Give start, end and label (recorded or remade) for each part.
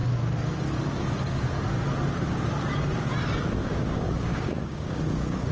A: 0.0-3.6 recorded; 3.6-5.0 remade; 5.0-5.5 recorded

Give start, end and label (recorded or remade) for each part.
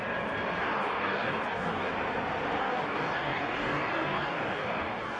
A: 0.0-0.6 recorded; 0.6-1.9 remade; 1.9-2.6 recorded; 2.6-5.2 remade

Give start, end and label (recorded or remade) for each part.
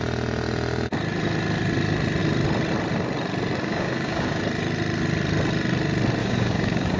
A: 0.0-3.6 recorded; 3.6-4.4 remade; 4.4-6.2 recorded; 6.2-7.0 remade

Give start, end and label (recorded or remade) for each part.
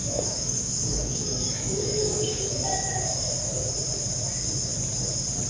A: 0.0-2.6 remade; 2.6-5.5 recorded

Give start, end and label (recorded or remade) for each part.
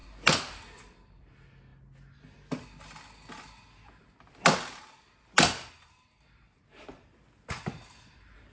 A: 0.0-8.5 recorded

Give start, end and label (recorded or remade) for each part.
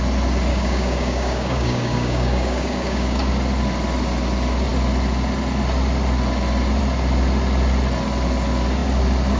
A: 0.0-0.5 recorded; 0.5-3.3 remade; 3.3-9.4 recorded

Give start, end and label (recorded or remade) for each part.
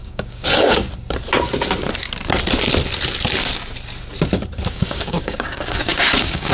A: 0.0-0.8 remade; 0.8-4.7 recorded; 4.7-6.5 remade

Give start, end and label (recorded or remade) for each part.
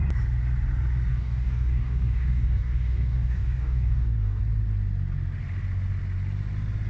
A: 0.0-1.1 recorded; 1.1-4.4 remade; 4.4-6.9 recorded